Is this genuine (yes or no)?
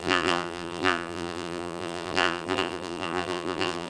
no